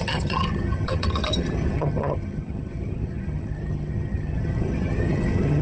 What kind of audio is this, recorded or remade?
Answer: remade